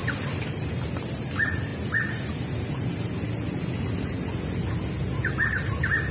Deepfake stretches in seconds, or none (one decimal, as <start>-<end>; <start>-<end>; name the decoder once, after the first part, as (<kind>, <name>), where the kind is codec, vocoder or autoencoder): 0.0-1.1 (vocoder, BigVGAN v2)